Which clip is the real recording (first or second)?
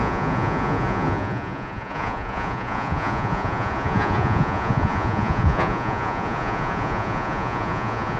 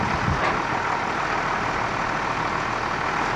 second